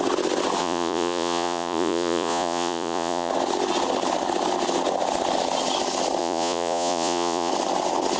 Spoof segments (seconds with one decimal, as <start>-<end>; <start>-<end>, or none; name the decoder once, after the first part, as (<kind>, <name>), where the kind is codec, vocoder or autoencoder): 0.6-3.3 (vocoder, Vocos); 6.2-7.5